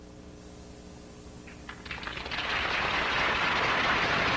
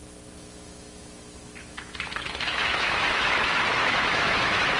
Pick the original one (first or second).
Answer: first